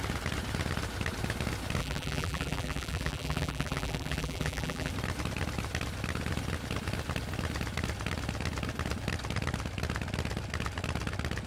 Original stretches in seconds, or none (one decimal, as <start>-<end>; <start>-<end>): 0.0-1.8; 4.9-11.5